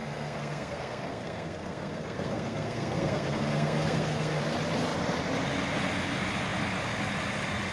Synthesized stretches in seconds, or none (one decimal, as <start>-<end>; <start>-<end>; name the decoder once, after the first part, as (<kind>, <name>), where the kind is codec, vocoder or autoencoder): 0.0-4.4 (codec, SNAC)